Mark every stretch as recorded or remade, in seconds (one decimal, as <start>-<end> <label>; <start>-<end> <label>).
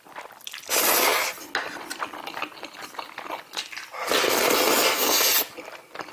0.0-6.1 recorded